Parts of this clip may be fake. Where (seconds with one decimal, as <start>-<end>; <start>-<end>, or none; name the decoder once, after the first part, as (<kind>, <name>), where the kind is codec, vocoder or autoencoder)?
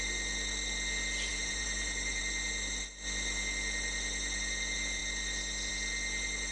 1.3-2.2 (vocoder, BigVGAN v2)